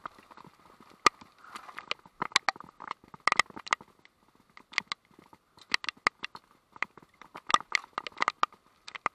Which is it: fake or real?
real